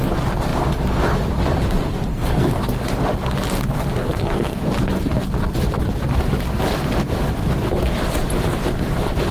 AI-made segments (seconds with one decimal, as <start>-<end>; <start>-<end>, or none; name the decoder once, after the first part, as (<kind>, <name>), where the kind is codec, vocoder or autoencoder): 2.1-2.6 (codec, SNAC); 4.0-4.6